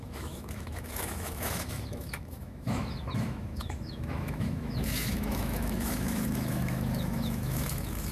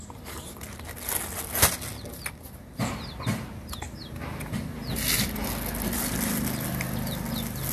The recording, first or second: second